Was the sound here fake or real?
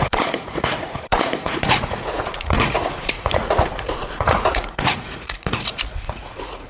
fake